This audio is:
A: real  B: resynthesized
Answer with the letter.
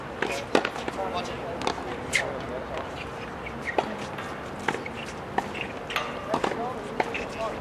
A